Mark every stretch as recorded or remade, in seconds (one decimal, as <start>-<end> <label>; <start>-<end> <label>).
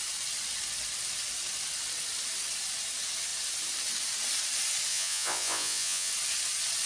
0.0-4.9 recorded; 4.9-6.1 remade; 6.1-6.9 recorded